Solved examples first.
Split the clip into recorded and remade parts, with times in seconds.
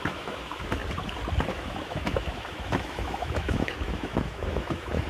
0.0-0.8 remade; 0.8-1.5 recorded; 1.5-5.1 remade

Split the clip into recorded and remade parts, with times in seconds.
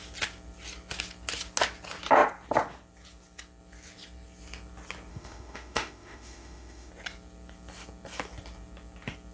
0.0-5.1 recorded; 5.1-6.9 remade; 6.9-9.3 recorded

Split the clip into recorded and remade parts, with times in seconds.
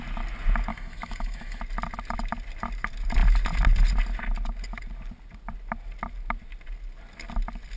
0.0-0.7 recorded; 0.7-1.6 remade; 1.6-7.8 recorded